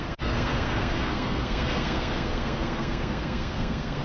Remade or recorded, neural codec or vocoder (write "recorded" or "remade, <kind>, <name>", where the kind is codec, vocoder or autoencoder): remade, codec, SNAC